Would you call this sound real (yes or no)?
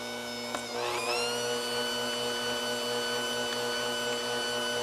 yes